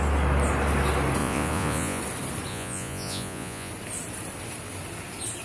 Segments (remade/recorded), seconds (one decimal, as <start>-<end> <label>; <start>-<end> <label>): 0.0-1.2 recorded; 1.2-2.0 remade; 2.0-2.5 recorded; 2.5-3.7 remade; 3.7-5.4 recorded